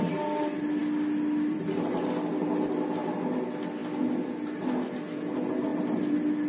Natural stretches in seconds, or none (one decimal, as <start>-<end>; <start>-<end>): 0.0-6.5